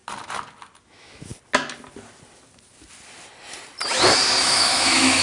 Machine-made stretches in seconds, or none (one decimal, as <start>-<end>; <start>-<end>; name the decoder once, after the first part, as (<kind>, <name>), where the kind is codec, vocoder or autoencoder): 0.8-1.3 (autoencoder, DAC-VAE); 4.4-5.2